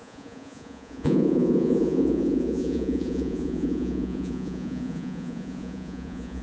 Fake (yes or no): yes